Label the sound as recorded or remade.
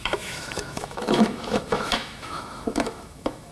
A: remade